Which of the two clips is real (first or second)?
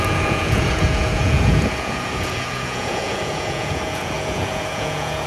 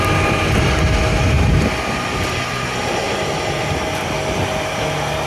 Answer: second